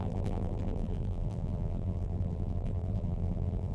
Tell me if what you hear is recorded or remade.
remade